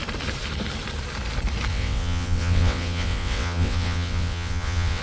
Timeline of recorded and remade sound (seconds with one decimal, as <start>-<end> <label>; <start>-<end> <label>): 0.0-1.7 recorded; 1.7-5.0 remade